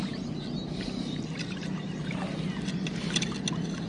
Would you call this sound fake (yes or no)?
no